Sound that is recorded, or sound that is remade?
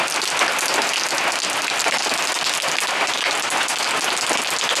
recorded